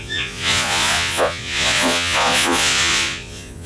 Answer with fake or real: fake